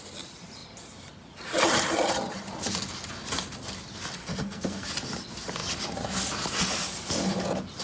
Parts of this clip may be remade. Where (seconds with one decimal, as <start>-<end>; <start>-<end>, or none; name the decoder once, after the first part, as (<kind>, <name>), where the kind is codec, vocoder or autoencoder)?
4.2-4.9 (codec, SNAC)